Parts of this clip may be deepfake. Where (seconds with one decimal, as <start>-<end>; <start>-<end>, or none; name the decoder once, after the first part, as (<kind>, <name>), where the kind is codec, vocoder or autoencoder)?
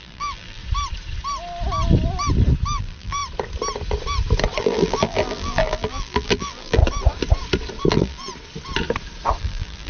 0.0-0.6 (vocoder, BigVGAN v2); 2.8-3.2; 4.6-6.8; 7.9-8.3; 9.4-9.9